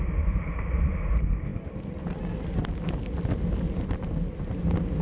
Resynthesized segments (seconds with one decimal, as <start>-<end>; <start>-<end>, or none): none